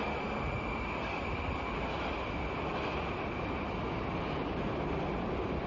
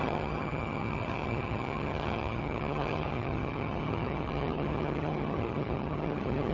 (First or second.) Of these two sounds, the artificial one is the second